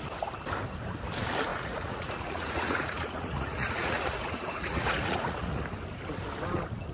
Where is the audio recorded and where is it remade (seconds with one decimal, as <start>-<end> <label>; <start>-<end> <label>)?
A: 0.0-1.5 recorded; 1.5-5.6 remade; 5.6-6.9 recorded